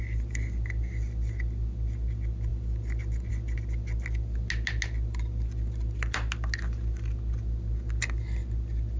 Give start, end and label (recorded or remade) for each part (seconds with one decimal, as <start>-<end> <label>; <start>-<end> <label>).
0.0-9.0 recorded